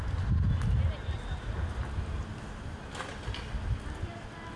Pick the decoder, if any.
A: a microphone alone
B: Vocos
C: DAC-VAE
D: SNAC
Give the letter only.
A